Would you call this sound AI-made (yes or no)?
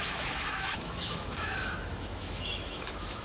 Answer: yes